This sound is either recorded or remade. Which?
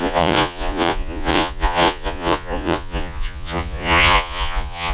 remade